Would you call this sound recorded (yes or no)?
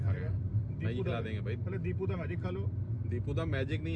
yes